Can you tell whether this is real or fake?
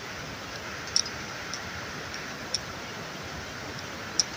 real